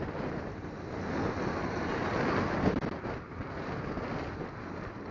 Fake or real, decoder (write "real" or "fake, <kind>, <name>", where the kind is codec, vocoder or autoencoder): real